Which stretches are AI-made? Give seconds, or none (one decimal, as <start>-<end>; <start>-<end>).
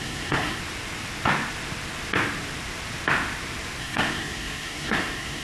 0.0-0.6; 3.8-5.4